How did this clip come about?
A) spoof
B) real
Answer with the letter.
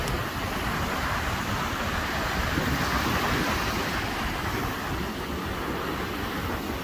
B